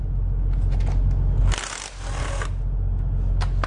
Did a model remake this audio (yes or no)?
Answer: no